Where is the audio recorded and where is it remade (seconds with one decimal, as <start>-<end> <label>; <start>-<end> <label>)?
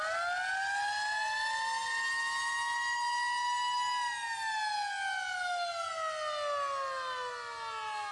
0.0-8.1 recorded